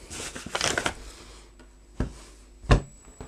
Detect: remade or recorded recorded